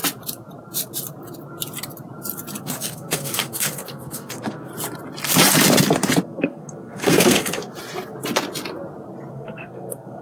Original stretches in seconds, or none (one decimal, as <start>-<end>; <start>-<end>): 0.0-2.6; 4.7-6.2; 7.7-9.3